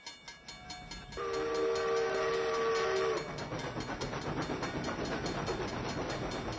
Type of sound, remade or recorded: recorded